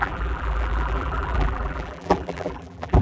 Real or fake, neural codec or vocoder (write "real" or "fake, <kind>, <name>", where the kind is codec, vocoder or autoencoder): fake, vocoder, BigVGAN v2